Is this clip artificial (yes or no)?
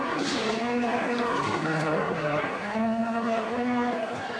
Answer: yes